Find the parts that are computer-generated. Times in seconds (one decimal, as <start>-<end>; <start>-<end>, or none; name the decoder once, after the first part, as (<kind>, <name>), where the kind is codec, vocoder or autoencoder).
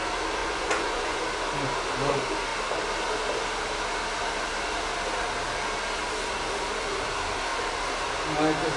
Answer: 0.4-1.2 (vocoder, Vocos)